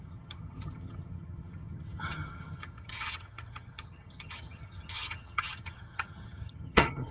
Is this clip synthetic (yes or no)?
yes